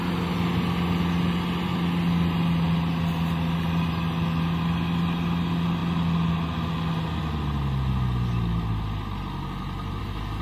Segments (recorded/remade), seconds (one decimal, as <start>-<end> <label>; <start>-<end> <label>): 0.0-10.4 recorded